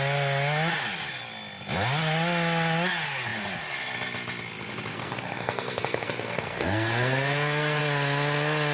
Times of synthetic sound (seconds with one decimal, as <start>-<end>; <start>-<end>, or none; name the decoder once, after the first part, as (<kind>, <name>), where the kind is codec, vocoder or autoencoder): 4.9-7.8 (codec, SNAC)